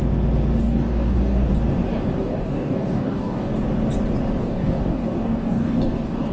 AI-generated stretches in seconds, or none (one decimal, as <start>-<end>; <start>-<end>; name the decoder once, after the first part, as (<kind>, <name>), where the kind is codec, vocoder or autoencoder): 0.6-1.5 (codec, DAC); 2.2-3.5; 4.4-6.3